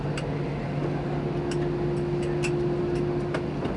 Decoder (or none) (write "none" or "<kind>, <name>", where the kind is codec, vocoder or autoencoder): none